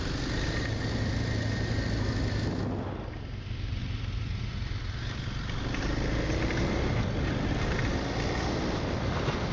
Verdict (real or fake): real